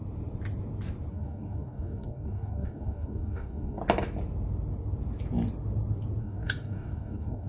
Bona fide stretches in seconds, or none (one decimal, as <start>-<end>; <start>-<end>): 0.0-1.1; 3.8-6.2

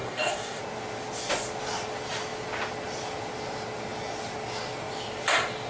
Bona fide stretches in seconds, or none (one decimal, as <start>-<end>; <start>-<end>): 0.6-5.7

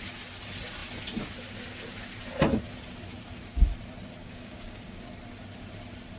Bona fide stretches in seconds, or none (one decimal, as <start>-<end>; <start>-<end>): 0.0-4.2; 5.1-6.2

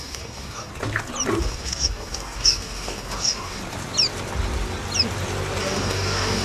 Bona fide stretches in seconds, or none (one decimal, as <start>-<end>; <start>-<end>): 0.7-1.4; 3.6-5.6